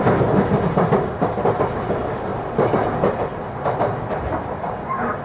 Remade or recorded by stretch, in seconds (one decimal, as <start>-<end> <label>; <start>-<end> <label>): 0.0-2.3 remade; 2.3-3.4 recorded; 3.4-5.2 remade